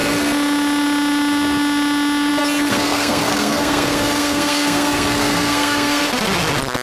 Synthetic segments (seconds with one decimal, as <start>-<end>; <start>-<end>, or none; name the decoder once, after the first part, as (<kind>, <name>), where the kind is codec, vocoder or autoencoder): 2.7-6.0 (codec, SNAC)